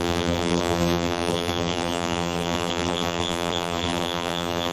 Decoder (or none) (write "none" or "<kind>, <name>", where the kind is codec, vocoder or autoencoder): vocoder, BigVGAN v2